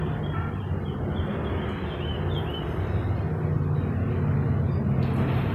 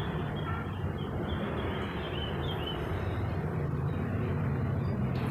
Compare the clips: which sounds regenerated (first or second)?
second